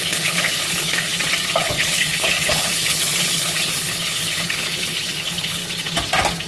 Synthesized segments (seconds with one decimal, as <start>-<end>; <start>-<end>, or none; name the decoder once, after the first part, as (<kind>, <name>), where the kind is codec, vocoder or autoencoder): 0.0-1.1 (codec, HILCodec); 1.6-5.6